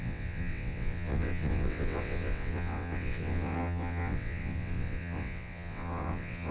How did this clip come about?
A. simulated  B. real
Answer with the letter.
A